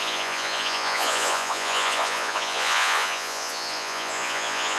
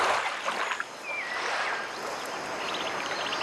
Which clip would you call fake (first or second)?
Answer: first